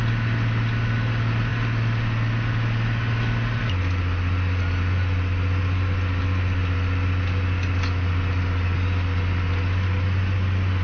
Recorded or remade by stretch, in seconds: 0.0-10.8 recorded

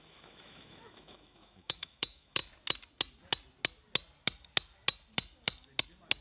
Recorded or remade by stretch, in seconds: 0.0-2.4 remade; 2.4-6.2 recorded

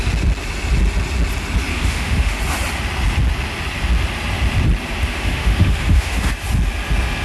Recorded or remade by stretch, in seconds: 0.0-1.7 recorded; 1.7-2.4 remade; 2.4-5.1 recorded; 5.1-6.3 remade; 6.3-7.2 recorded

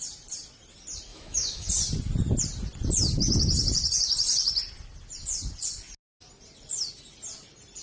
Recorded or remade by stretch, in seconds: 0.0-1.1 recorded; 1.1-1.7 remade; 1.7-7.8 recorded